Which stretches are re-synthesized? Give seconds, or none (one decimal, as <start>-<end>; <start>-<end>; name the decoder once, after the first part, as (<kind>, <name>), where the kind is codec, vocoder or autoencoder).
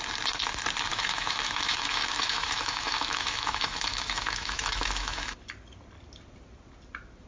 0.9-5.3 (autoencoder, DAC-VAE)